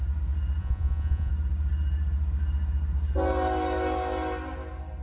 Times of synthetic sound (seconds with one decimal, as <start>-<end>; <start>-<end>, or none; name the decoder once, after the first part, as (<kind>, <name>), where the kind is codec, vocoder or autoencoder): 0.6-1.3 (vocoder, Vocos)